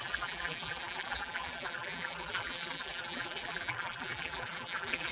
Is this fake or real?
fake